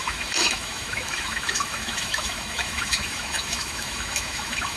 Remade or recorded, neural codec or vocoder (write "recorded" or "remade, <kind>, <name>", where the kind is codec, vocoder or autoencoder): remade, autoencoder, DAC-VAE